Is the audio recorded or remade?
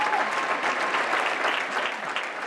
recorded